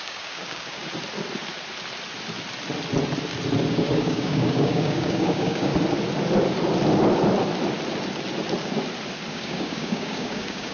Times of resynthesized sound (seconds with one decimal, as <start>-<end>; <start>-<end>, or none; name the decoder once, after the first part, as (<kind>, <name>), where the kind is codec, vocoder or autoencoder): 0.0-0.8 (codec, DAC); 3.7-5.7; 9.3-10.7